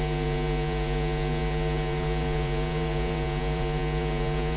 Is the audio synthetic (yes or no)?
yes